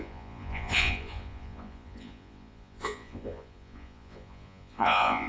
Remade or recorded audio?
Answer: remade